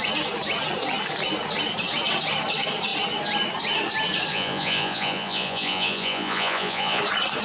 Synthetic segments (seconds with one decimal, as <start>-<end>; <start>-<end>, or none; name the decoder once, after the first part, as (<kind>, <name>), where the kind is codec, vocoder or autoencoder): 4.3-7.0 (vocoder, Vocos)